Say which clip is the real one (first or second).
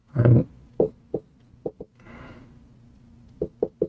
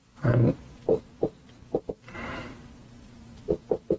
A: first